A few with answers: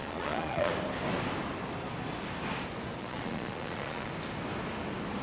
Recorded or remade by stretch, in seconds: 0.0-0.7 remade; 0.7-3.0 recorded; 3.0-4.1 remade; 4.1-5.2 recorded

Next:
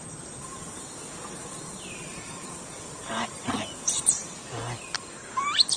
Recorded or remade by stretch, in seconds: 0.0-5.8 recorded